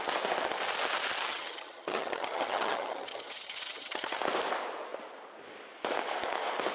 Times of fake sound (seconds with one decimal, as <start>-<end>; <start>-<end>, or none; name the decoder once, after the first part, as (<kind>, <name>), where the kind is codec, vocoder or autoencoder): 1.3-4.2 (vocoder, HiFi-GAN)